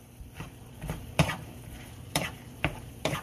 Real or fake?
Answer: fake